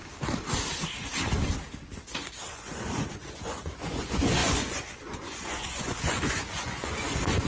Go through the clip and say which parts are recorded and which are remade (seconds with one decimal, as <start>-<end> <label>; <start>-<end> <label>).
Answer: 0.0-2.5 recorded; 2.5-7.5 remade